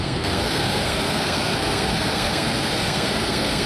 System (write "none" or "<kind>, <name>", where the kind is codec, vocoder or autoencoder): codec, SNAC